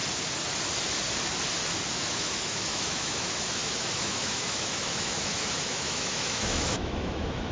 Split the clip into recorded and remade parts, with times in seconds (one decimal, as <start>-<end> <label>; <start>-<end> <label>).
0.0-1.9 recorded; 1.9-7.5 remade